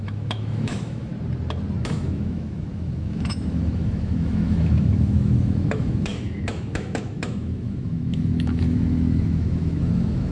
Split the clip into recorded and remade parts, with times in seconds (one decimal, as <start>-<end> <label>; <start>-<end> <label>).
0.0-1.1 remade; 1.1-1.8 recorded; 1.8-10.3 remade